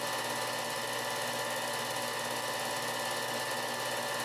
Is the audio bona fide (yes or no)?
yes